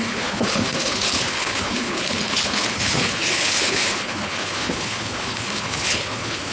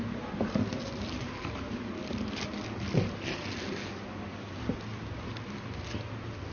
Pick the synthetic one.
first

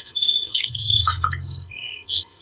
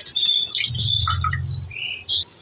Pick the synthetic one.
first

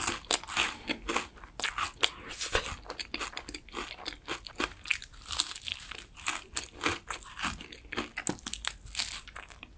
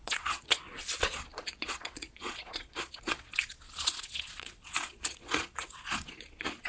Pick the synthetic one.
second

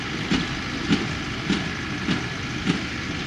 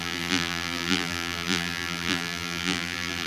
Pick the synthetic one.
second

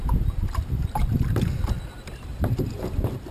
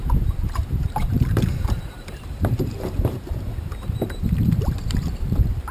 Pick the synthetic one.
second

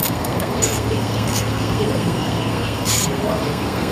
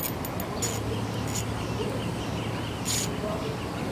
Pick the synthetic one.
first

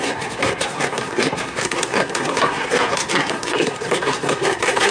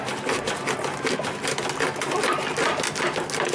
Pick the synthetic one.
first